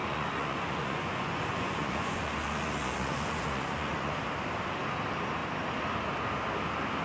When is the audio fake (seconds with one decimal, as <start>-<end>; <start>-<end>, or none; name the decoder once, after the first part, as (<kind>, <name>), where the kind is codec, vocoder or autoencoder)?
0.0-4.2 (vocoder, Vocos)